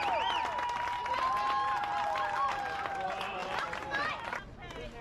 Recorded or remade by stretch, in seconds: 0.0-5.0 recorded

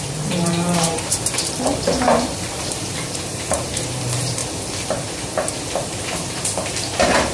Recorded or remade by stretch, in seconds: 0.0-4.4 remade; 4.4-5.8 recorded; 5.8-7.3 remade